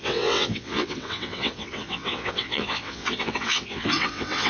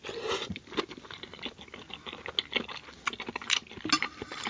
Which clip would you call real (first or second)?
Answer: second